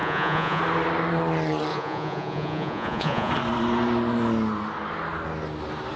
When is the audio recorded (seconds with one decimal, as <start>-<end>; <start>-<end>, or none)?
0.6-1.7; 3.3-6.0